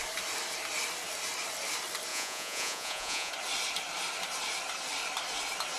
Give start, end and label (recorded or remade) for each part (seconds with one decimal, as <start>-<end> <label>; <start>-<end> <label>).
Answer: 0.0-2.1 recorded; 2.1-3.3 remade; 3.3-5.8 recorded